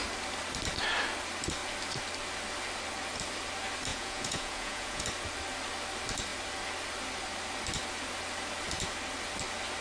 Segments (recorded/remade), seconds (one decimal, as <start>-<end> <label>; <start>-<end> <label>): 0.0-3.9 recorded; 3.9-5.0 remade; 5.0-9.8 recorded